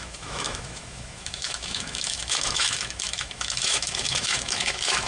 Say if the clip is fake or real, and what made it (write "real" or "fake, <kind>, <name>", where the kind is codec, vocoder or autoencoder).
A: fake, autoencoder, DAC-VAE